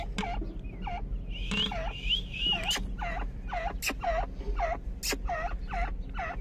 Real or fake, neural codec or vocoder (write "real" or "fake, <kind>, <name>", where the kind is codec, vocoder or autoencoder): real